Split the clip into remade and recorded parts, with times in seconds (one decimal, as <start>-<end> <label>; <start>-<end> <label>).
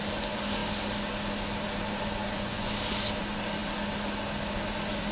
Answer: 0.0-2.2 recorded; 2.2-2.7 remade; 2.7-5.1 recorded